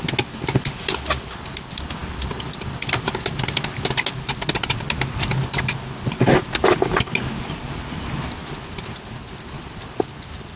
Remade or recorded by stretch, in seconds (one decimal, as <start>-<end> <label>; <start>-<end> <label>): 0.0-2.0 recorded; 2.0-3.6 remade; 3.6-10.6 recorded